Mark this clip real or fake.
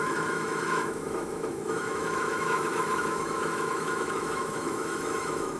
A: fake